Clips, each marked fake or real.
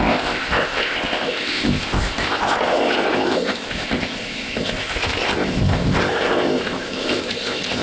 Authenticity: fake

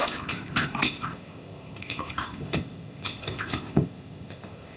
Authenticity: fake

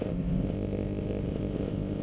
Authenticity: fake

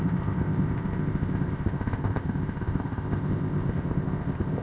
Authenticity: fake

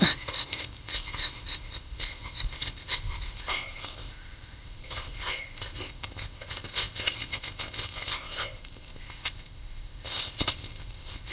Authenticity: fake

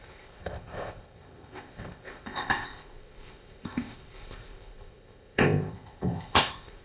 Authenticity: fake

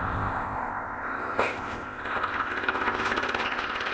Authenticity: fake